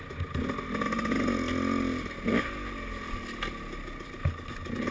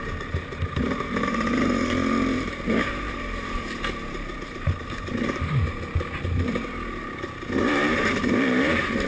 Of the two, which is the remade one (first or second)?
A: second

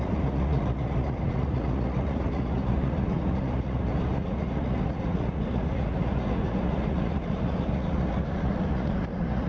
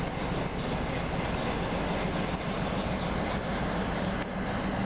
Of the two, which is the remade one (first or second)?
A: first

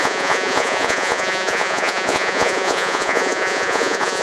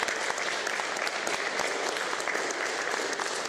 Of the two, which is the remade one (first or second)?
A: first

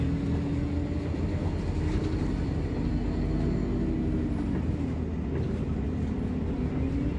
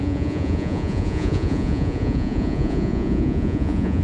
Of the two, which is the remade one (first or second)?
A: second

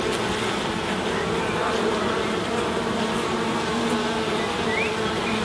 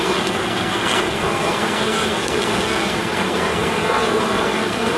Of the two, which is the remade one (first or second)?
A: second